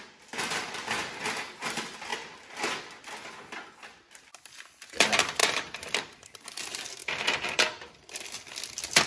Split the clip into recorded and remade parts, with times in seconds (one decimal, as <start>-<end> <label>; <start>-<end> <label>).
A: 0.0-5.4 recorded; 5.4-6.4 remade; 6.4-9.1 recorded